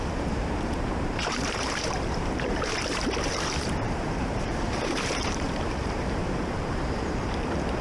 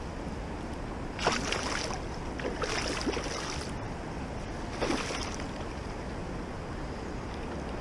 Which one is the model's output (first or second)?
first